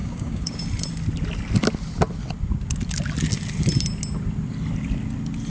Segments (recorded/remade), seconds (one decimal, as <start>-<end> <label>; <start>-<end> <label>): 0.0-0.6 remade; 0.6-5.5 recorded